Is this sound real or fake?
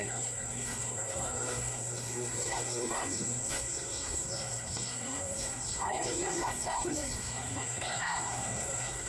fake